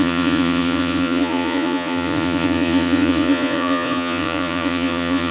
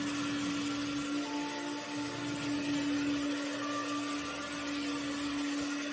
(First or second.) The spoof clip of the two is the first